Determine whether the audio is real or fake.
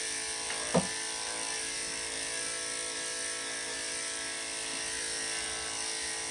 real